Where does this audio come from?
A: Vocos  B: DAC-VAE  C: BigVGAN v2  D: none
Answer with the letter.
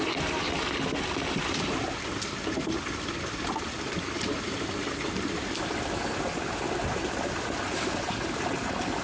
D